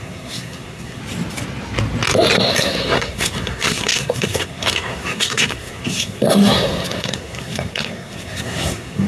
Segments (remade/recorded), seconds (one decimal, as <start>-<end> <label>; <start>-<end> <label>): 0.0-1.0 remade; 1.0-2.5 recorded; 2.5-9.1 remade